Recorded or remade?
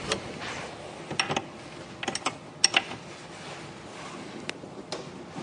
recorded